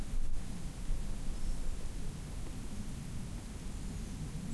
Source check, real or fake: real